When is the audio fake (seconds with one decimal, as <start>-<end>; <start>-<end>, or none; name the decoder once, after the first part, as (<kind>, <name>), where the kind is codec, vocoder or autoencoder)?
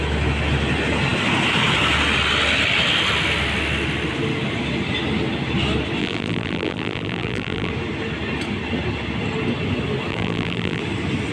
6.0-7.7 (vocoder, BigVGAN v2); 10.1-10.8